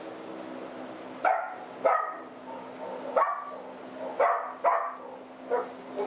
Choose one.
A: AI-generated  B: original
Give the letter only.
B